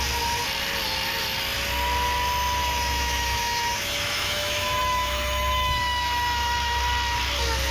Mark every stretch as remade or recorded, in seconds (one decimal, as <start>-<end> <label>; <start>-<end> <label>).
0.0-2.6 recorded; 2.6-6.8 remade; 6.8-7.7 recorded